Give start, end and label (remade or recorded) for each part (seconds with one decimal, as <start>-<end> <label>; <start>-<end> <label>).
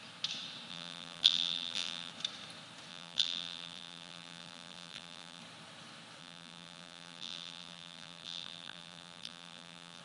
0.0-0.7 recorded; 0.7-2.1 remade; 2.1-2.9 recorded; 2.9-5.4 remade; 5.4-6.2 recorded; 6.2-10.0 remade